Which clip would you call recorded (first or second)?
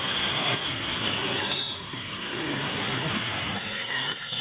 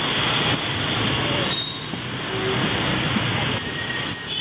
second